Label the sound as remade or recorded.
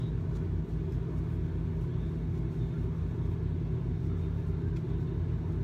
recorded